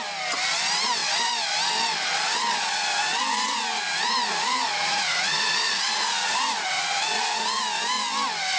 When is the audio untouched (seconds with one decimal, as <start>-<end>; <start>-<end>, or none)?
0.0-3.7; 7.6-8.6